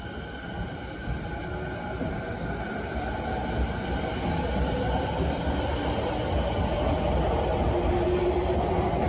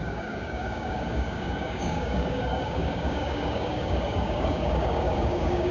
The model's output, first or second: second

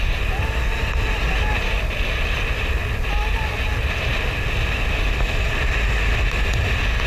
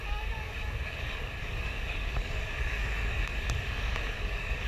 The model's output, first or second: second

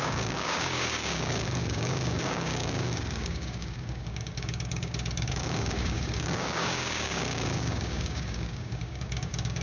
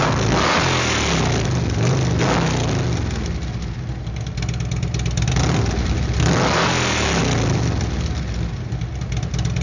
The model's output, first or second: first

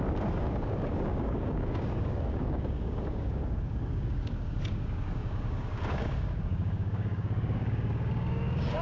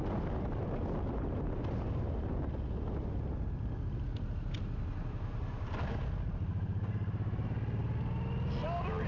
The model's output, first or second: first